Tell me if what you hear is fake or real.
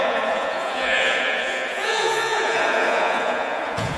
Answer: fake